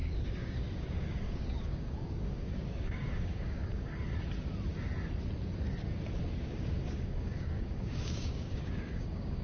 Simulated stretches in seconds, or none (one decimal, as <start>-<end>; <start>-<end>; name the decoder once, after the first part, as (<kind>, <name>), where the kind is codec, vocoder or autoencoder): 0.0-3.9 (codec, DAC); 6.3-9.4